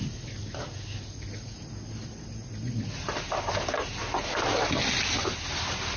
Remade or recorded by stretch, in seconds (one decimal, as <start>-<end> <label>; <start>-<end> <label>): 0.0-6.0 recorded